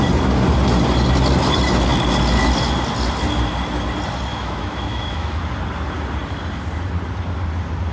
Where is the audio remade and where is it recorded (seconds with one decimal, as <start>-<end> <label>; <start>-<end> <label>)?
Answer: 0.0-4.3 recorded; 4.3-5.4 remade; 5.4-7.9 recorded